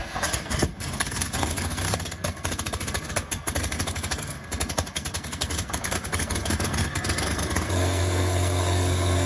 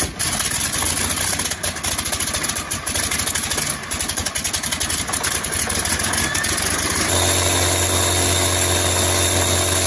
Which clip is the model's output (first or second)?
first